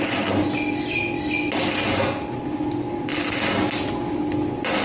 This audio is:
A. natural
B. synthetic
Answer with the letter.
A